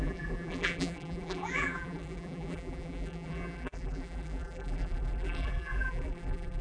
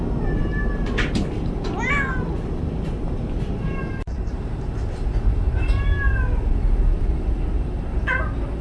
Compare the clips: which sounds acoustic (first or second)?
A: second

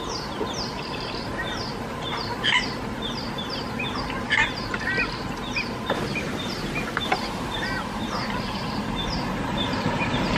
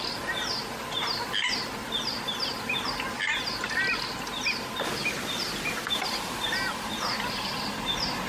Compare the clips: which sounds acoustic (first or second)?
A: second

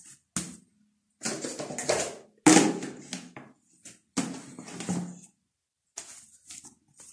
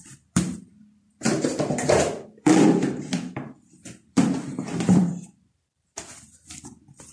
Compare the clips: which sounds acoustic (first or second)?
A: first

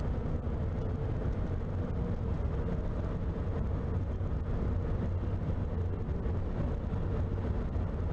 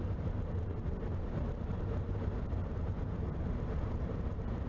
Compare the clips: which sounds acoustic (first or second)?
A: first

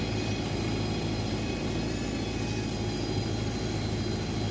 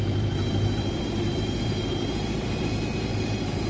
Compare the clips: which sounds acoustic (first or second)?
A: first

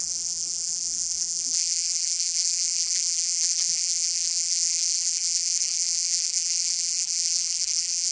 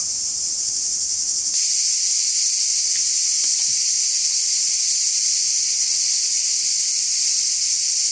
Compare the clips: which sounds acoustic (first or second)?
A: second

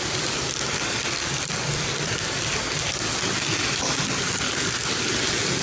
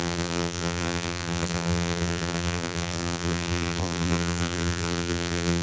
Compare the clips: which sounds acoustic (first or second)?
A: first